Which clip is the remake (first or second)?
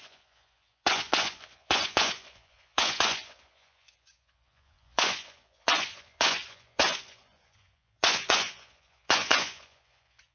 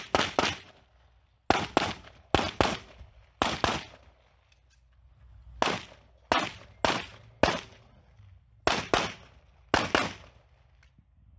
first